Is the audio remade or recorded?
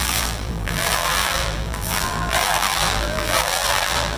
remade